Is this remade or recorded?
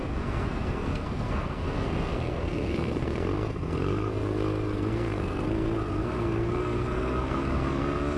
remade